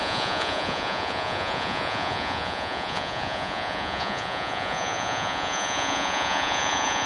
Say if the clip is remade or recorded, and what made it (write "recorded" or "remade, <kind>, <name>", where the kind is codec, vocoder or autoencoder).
remade, vocoder, Vocos